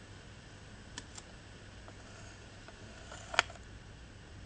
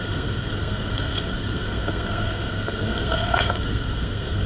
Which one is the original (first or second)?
first